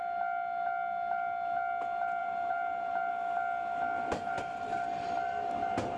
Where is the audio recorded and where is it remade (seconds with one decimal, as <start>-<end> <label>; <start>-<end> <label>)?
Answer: 0.0-2.2 recorded; 2.2-3.1 remade; 3.1-6.0 recorded